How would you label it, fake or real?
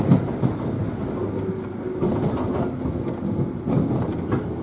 real